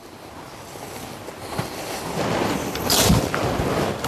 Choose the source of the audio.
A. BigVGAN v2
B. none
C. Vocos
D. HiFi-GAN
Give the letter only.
B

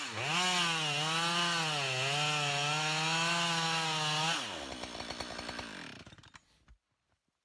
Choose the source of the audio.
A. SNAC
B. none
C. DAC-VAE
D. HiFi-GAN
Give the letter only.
B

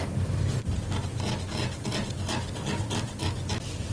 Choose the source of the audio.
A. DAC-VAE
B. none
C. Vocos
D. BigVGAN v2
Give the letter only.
B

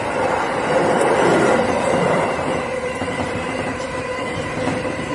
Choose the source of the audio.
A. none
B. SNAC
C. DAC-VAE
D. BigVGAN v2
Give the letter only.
D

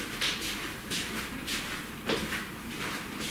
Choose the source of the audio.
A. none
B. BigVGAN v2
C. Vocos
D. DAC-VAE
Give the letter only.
A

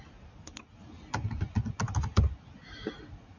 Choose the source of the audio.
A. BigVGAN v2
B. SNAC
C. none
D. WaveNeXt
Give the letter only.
C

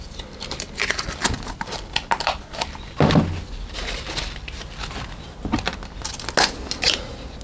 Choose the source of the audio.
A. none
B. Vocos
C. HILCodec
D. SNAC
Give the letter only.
A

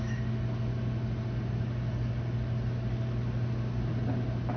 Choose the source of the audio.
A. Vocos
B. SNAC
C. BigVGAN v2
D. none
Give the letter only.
D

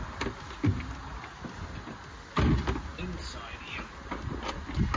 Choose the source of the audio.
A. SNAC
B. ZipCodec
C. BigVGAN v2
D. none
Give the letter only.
D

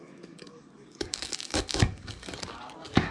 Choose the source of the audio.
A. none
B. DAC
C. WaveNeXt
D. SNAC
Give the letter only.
B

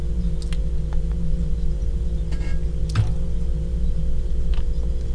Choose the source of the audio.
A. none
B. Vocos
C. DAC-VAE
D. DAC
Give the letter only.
A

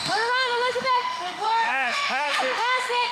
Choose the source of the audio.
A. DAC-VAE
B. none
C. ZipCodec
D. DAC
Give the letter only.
A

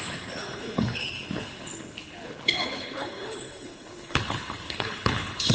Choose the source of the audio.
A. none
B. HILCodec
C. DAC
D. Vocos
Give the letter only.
B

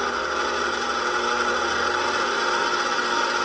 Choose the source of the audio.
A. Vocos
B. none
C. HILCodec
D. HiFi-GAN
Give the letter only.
B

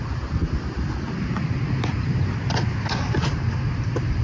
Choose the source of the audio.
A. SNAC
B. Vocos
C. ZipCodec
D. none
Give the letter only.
D